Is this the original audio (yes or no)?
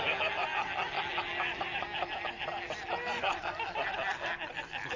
yes